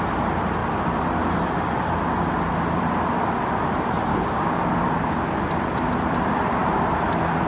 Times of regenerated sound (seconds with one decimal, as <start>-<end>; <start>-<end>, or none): 4.1-4.6